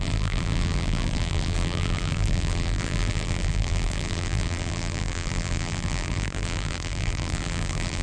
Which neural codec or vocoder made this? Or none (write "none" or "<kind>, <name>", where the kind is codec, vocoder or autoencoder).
vocoder, BigVGAN v2